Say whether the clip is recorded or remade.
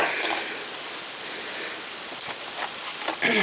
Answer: recorded